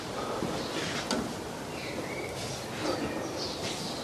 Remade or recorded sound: recorded